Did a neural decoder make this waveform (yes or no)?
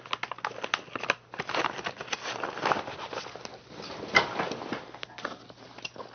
no